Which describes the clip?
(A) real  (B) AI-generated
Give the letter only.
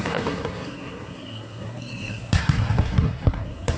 B